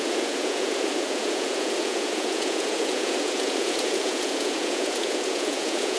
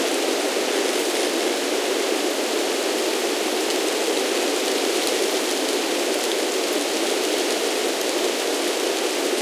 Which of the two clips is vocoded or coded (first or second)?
first